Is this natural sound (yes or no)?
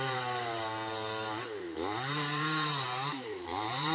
no